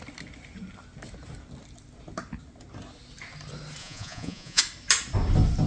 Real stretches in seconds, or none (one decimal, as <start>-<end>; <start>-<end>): 0.0-3.8; 4.6-5.7